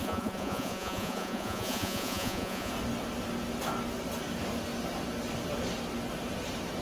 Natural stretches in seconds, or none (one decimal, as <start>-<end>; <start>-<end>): 2.7-6.8